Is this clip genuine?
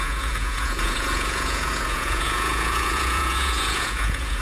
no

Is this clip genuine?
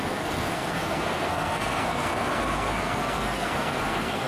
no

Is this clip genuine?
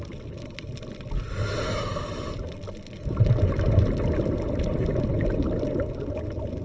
yes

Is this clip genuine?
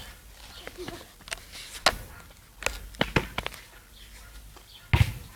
yes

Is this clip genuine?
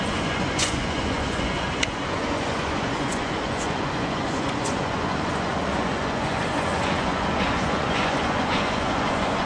no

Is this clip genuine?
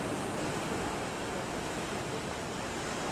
no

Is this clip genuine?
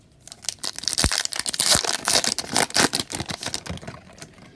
yes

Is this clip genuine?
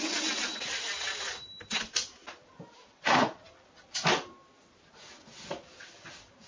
yes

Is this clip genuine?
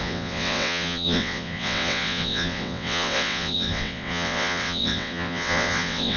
no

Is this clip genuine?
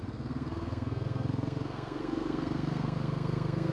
no